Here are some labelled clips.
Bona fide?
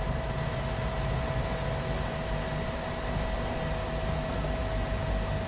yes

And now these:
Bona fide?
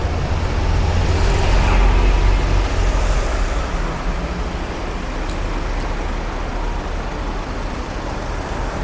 yes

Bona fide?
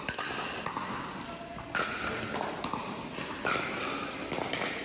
yes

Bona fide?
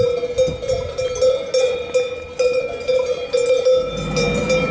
yes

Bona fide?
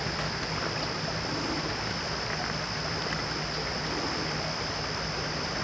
yes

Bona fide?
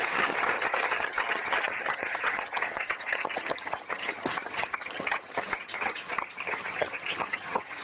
no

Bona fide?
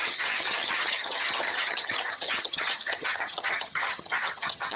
no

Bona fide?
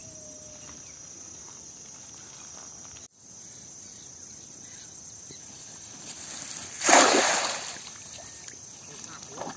yes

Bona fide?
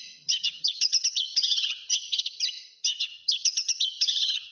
no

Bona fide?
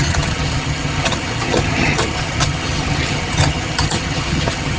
no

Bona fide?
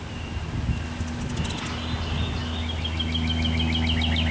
yes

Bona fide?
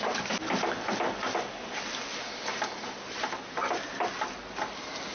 yes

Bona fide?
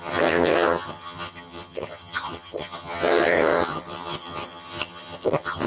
no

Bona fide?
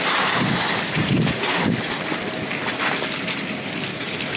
yes